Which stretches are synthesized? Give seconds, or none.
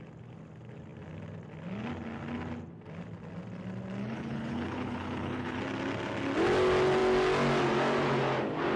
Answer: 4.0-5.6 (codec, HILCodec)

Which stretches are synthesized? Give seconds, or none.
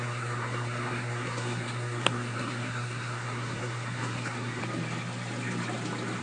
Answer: 0.0-4.6 (codec, SNAC)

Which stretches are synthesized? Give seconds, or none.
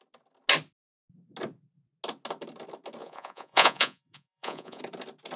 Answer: 3.0-4.8 (vocoder, Vocos)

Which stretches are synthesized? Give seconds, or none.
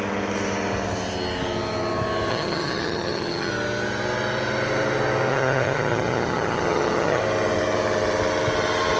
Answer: 2.3-3.5 (vocoder, HiFi-GAN); 5.3-7.2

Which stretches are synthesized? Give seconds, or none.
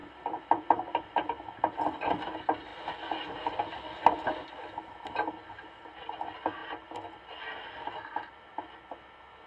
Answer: none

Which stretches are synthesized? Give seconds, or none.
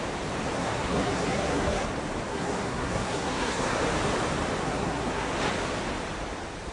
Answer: 0.6-1.9 (codec, SNAC); 2.3-3.8; 4.6-5.3